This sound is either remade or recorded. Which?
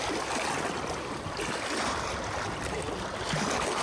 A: recorded